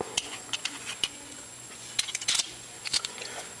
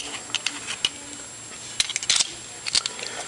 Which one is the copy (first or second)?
first